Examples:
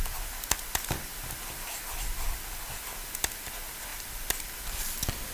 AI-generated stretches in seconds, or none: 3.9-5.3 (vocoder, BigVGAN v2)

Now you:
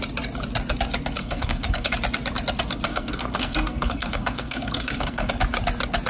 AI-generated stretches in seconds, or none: 1.2-1.9 (codec, SNAC); 2.9-5.3

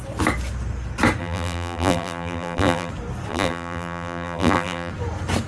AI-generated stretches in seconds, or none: 1.2-2.9 (vocoder, BigVGAN v2); 3.3-4.9

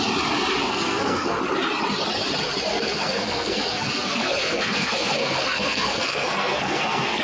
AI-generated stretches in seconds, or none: 0.6-1.4 (codec, SNAC); 2.7-7.2

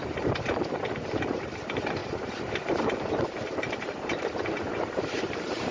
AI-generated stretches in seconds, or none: 0.0-5.7 (vocoder, BigVGAN v2)

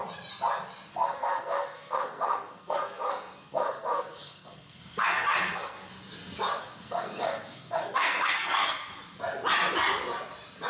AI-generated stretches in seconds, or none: 0.9-5.9 (codec, SNAC); 6.6-8.8

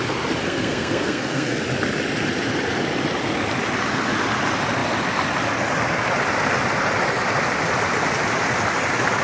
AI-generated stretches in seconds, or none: 0.4-1.6 (codec, SNAC)

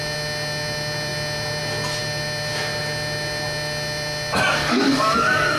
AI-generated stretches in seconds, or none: 4.6-5.6 (codec, DAC)